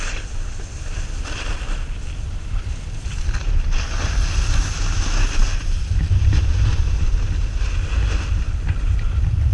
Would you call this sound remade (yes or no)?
no